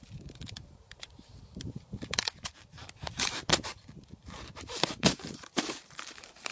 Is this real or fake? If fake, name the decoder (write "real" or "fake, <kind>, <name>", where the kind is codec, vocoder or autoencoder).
fake, vocoder, BigVGAN v2